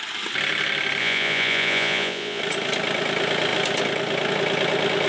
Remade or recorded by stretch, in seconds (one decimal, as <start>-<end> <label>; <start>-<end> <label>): 0.0-1.0 recorded; 1.0-2.4 remade; 2.4-5.1 recorded